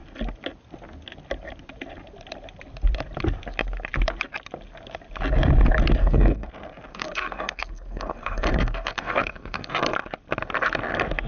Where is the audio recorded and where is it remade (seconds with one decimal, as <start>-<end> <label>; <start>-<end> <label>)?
0.0-6.0 recorded; 6.0-6.5 remade; 6.5-6.9 recorded; 6.9-9.7 remade; 9.7-11.3 recorded